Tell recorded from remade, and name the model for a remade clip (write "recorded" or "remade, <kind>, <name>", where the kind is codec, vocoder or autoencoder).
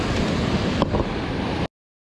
recorded